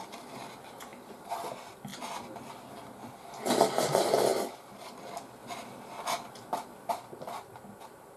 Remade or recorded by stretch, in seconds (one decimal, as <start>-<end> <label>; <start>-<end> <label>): 0.0-1.9 remade; 1.9-3.1 recorded; 3.1-5.4 remade; 5.4-6.9 recorded; 6.9-8.2 remade